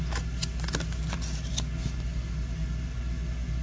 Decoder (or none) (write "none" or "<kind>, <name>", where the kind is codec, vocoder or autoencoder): none